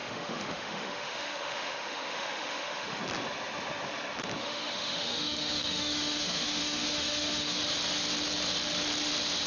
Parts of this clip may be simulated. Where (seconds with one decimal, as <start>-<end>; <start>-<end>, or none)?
0.0-3.0; 4.4-7.6